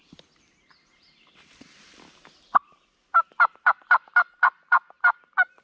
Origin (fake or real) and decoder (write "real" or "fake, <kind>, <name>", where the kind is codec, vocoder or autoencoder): real